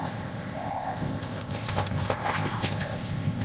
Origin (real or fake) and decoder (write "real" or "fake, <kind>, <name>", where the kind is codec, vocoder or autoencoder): fake, codec, ZipCodec